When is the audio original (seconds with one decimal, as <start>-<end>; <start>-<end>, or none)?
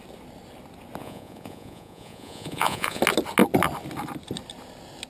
0.0-1.0; 3.0-5.1